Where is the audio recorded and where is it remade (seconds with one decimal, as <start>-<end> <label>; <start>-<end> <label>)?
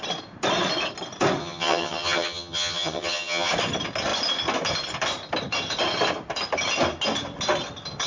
0.0-1.4 recorded; 1.4-3.5 remade; 3.5-8.1 recorded